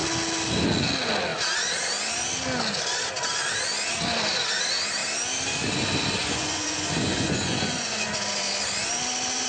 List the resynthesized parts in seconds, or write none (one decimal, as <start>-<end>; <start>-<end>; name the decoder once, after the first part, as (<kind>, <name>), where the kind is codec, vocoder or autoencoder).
6.2-8.1 (vocoder, Vocos)